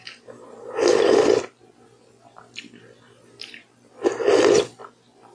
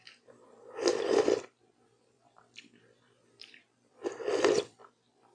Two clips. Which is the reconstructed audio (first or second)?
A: second